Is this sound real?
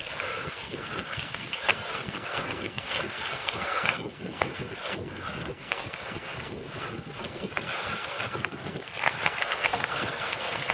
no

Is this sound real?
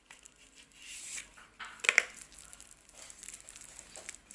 yes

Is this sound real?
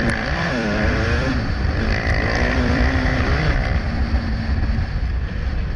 no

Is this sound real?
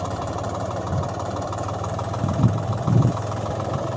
no